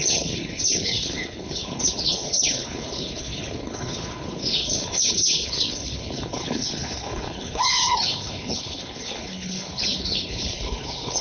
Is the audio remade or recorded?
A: remade